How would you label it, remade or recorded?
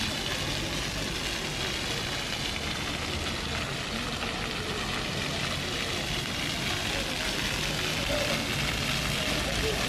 recorded